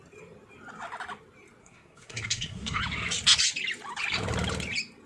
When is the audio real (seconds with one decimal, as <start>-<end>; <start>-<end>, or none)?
0.0-1.6; 2.8-5.1